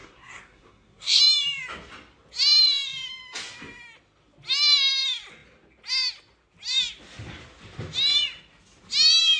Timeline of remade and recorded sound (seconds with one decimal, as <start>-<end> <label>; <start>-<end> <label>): 0.0-1.2 remade; 1.2-9.4 recorded